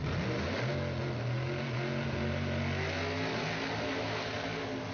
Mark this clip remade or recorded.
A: recorded